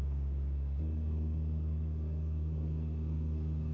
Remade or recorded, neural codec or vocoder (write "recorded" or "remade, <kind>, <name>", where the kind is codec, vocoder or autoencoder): remade, codec, SNAC